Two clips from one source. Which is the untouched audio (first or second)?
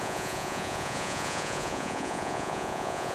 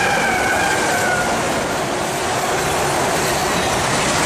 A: second